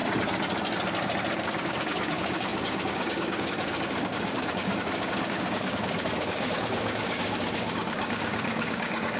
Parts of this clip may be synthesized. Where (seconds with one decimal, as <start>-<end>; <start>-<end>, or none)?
1.4-9.2